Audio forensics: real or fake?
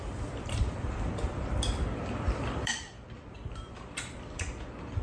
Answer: fake